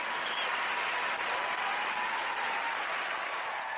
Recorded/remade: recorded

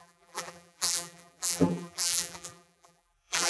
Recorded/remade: remade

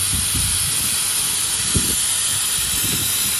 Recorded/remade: recorded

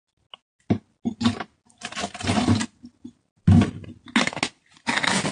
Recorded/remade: recorded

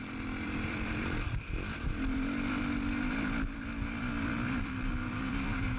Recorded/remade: remade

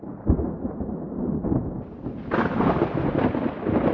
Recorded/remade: recorded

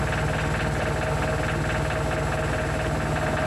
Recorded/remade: recorded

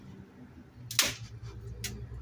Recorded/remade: recorded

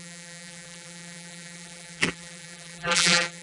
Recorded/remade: remade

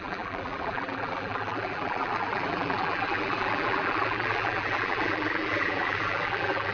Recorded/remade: remade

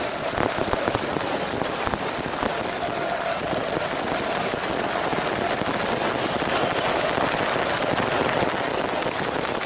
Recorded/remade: recorded